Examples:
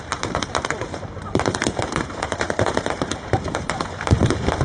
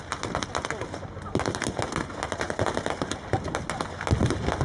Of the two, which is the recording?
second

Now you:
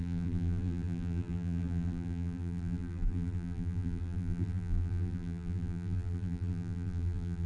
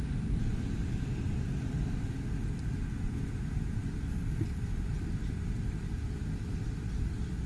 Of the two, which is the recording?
second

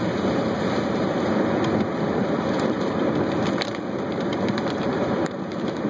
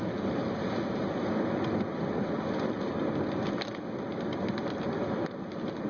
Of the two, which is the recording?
second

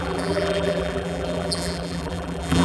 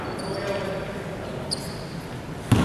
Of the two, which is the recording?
second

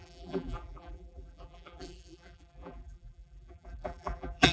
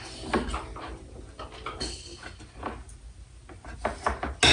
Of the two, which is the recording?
second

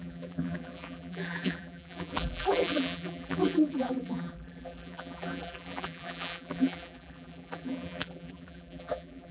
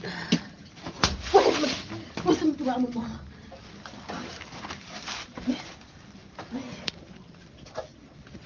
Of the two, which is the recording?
second